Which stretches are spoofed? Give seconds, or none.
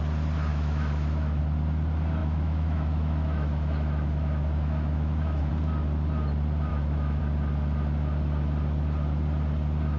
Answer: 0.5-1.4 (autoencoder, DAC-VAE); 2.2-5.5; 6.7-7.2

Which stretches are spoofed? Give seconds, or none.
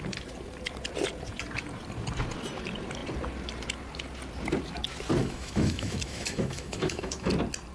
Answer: 5.2-7.3 (autoencoder, DAC-VAE)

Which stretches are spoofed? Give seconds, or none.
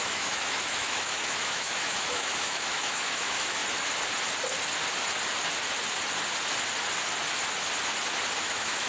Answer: 0.0-3.6 (autoencoder, DAC-VAE); 8.4-8.9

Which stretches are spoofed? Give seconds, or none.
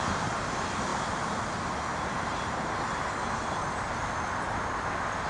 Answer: none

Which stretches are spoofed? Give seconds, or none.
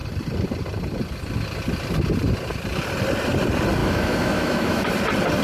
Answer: 3.8-4.9 (autoencoder, DAC-VAE)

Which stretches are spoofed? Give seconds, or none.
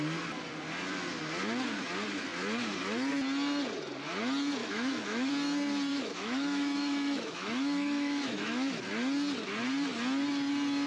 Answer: 4.6-5.3 (autoencoder, DAC-VAE); 5.9-8.8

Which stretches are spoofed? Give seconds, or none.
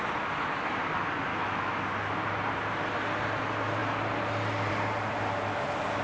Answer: 1.3-1.8 (autoencoder, DAC-VAE)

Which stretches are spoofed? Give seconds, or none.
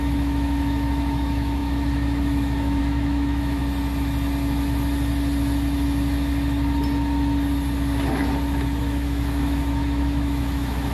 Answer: 0.0-3.6 (autoencoder, DAC-VAE); 8.8-10.9